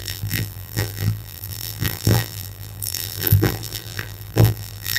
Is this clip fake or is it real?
fake